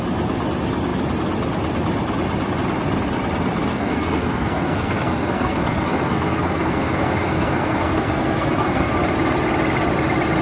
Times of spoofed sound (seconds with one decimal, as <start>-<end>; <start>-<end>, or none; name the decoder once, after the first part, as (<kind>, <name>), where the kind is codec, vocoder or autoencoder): 3.7-8.9 (codec, SNAC)